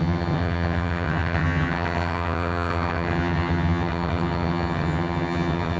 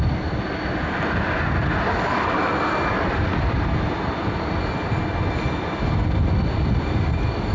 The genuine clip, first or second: second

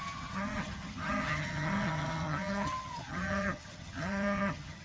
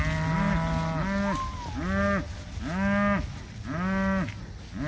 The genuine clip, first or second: second